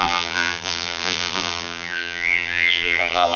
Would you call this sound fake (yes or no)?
yes